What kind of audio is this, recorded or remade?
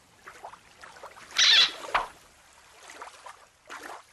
recorded